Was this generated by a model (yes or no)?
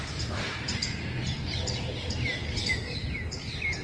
no